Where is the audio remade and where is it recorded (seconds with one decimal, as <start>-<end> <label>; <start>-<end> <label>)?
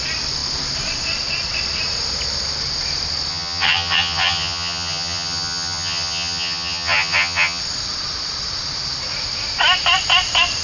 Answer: 0.0-3.3 recorded; 3.3-7.6 remade; 7.6-10.6 recorded